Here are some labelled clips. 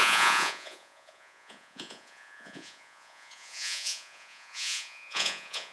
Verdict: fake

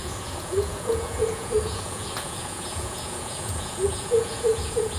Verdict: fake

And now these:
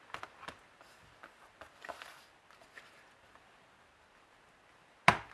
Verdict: real